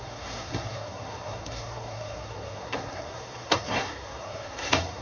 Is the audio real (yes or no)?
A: no